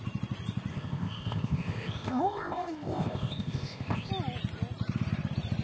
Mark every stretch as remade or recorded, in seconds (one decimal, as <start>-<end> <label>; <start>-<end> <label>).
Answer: 0.0-0.7 recorded; 0.7-4.1 remade; 4.1-5.6 recorded